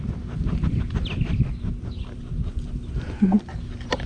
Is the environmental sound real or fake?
real